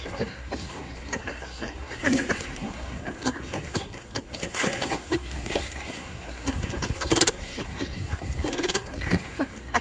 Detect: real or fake fake